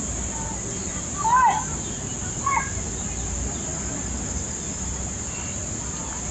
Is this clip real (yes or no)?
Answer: yes